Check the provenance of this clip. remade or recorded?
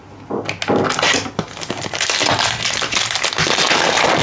recorded